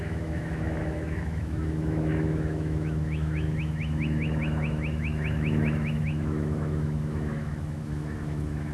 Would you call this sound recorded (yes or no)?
no